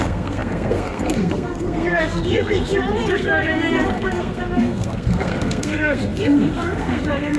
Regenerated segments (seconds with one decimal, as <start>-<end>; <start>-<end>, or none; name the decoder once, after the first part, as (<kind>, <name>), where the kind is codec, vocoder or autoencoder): 0.0-7.4 (codec, SNAC)